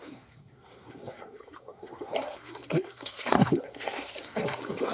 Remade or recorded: remade